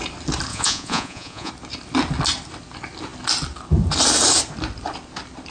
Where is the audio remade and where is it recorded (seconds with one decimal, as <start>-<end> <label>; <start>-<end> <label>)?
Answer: 0.0-0.5 recorded; 0.5-1.5 remade; 1.5-5.5 recorded